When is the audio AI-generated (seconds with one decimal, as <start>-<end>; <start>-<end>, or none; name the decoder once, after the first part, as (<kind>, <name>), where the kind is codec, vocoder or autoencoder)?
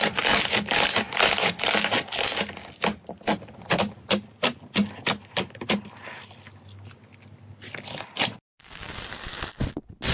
none